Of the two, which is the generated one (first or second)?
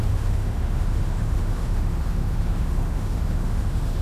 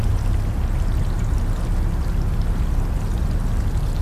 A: first